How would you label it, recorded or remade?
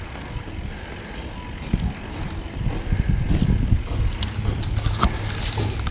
recorded